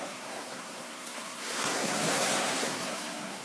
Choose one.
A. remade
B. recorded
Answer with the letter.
A